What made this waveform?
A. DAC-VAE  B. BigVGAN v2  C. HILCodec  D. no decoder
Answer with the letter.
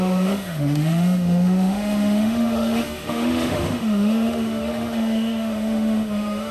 A